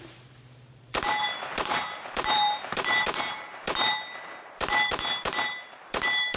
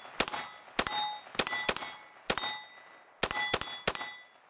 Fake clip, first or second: first